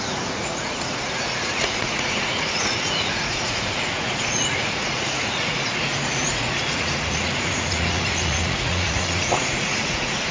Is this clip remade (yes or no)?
yes